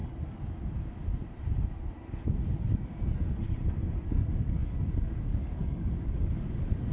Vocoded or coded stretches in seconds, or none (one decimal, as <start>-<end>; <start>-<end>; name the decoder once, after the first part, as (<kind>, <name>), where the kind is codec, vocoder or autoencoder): 4.1-6.9 (codec, DAC)